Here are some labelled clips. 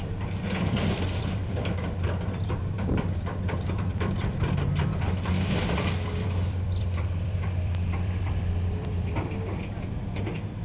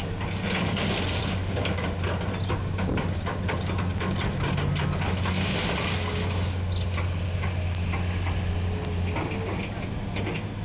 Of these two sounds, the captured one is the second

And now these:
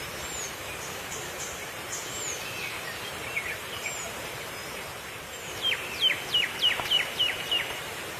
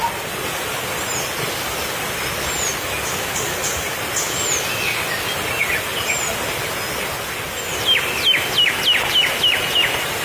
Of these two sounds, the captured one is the second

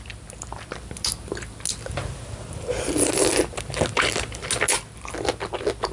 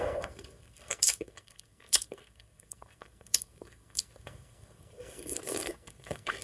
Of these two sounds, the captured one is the first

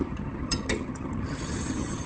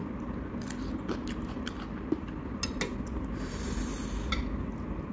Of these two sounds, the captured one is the second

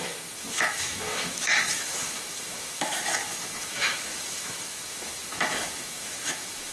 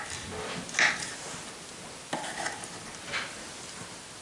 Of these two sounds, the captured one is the second